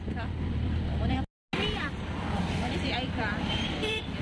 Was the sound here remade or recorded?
recorded